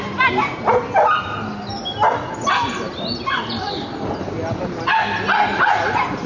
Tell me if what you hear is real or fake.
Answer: real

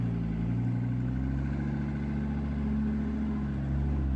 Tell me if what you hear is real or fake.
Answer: real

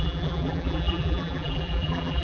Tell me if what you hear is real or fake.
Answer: fake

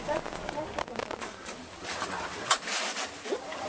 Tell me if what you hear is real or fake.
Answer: real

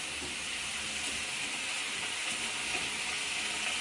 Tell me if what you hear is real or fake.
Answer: real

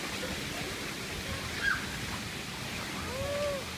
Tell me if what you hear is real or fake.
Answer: real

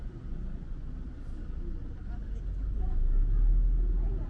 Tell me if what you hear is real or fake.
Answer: real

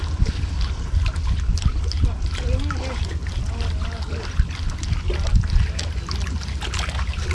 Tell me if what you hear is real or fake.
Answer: real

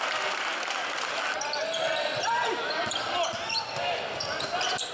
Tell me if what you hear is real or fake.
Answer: fake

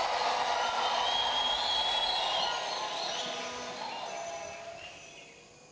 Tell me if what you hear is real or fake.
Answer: real